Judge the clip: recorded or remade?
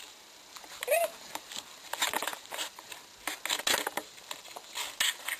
recorded